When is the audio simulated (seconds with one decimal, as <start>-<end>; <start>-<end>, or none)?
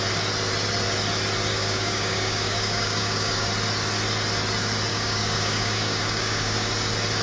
1.5-3.5; 4.9-6.7